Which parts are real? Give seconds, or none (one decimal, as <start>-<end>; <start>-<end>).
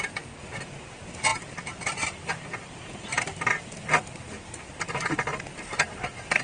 0.0-6.4